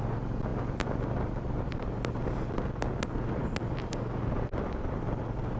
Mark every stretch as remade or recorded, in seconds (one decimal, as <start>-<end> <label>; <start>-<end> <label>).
0.0-5.6 recorded